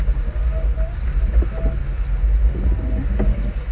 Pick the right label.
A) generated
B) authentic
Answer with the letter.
B